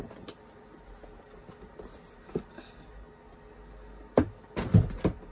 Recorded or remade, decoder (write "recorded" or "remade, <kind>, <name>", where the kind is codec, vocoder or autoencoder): recorded